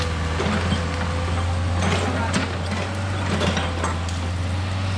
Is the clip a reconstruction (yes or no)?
no